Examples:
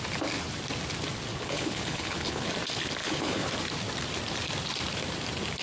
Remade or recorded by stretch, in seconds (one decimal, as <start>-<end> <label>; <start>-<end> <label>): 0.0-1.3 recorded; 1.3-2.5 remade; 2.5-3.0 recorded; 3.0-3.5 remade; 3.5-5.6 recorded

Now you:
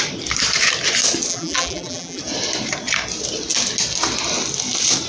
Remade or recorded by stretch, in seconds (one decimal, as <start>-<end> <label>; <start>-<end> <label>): 0.0-1.3 recorded; 1.3-2.2 remade; 2.2-5.1 recorded

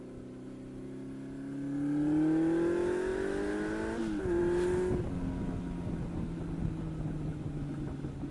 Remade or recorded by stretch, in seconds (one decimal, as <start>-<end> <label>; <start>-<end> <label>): 0.0-8.3 recorded